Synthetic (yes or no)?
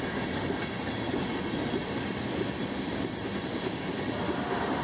no